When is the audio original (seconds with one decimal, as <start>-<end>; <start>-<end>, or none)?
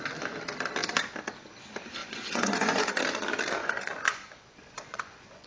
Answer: 0.0-2.0; 3.0-3.6